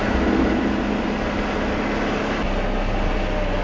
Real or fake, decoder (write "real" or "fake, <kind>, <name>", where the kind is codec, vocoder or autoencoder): real